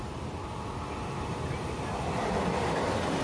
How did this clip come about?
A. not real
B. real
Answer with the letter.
B